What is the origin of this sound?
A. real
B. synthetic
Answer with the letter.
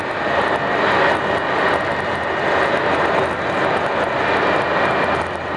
A